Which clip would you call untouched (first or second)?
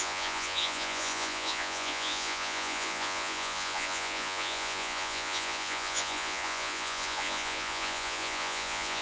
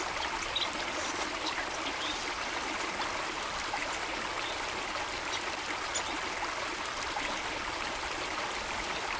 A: second